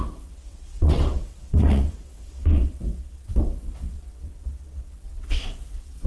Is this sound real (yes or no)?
no